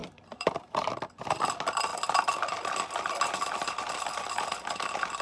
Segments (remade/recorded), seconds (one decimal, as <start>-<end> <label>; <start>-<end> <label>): 0.0-0.5 remade; 0.5-5.2 recorded